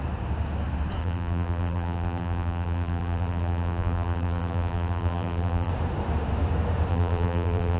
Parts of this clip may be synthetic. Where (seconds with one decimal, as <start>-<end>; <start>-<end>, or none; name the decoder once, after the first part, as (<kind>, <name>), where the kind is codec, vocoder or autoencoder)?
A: 1.0-5.7 (vocoder, BigVGAN v2); 6.9-7.8